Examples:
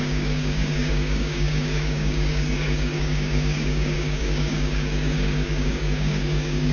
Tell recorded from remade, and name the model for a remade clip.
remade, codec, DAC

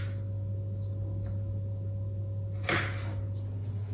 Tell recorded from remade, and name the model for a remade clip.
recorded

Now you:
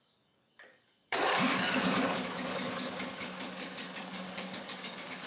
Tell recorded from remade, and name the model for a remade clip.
remade, codec, DAC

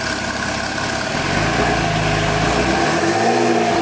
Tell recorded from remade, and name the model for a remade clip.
recorded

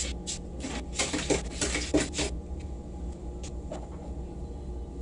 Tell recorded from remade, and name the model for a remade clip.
recorded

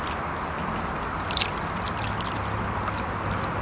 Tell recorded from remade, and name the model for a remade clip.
recorded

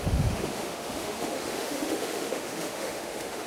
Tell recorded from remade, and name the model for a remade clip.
remade, autoencoder, DAC-VAE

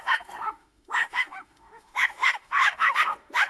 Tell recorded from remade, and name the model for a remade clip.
remade, autoencoder, DAC-VAE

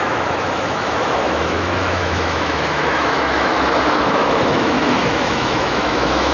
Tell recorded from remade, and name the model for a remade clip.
remade, autoencoder, DAC-VAE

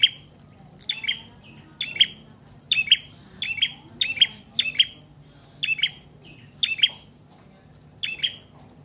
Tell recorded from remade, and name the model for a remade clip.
recorded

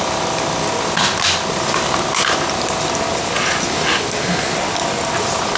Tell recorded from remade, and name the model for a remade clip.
recorded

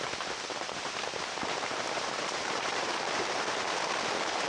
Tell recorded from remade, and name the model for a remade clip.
remade, vocoder, BigVGAN v2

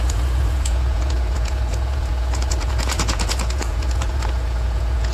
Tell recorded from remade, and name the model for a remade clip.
remade, vocoder, Vocos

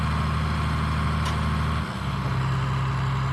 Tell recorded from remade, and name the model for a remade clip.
recorded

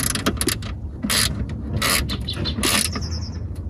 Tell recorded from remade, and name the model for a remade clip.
recorded